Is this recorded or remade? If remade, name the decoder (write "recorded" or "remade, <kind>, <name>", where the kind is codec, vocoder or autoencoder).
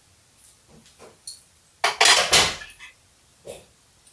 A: recorded